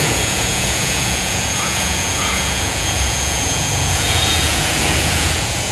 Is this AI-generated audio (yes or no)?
yes